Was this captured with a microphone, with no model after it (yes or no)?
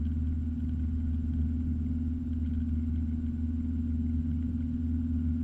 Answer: yes